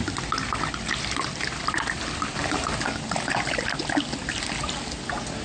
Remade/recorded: recorded